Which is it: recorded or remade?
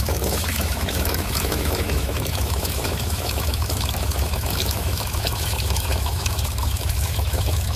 remade